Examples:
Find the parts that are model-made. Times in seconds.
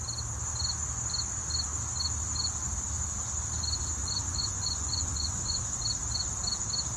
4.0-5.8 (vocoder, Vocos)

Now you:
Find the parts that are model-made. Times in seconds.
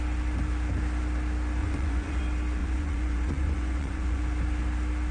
1.6-2.2 (vocoder, Vocos); 2.6-4.2